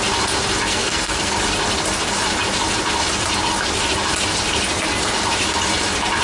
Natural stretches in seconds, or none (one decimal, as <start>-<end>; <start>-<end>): 0.0-0.7; 1.4-6.2